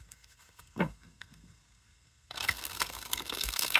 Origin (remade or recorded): remade